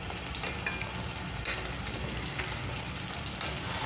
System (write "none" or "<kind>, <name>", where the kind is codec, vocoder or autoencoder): none